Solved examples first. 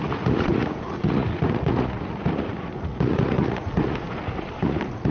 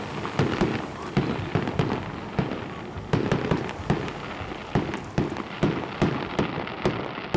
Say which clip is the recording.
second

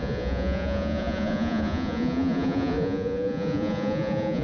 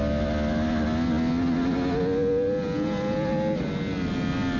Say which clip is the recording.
second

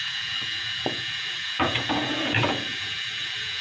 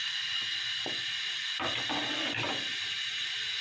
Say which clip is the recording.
second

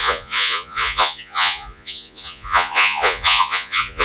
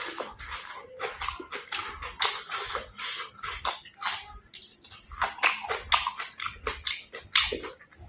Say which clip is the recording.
second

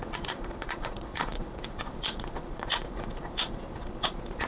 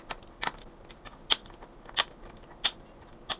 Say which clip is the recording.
second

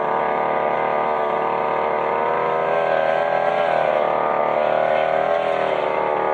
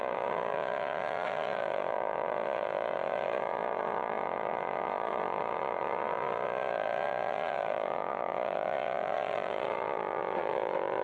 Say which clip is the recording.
first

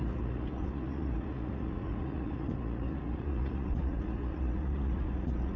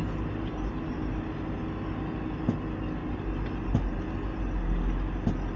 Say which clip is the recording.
second